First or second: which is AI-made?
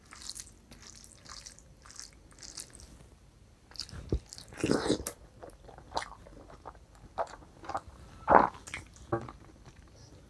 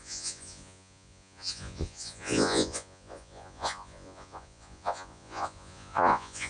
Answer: second